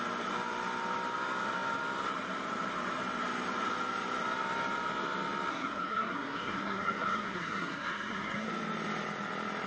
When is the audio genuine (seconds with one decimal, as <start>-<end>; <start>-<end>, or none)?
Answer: 0.0-5.5; 8.5-9.7